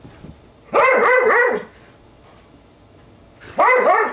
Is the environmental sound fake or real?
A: real